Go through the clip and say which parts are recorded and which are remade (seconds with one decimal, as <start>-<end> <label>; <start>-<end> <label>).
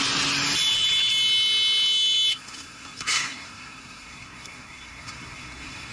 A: 0.0-2.3 recorded; 2.3-5.9 remade